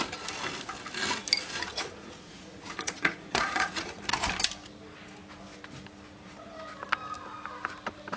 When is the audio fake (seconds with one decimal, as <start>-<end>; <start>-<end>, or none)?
1.7-4.0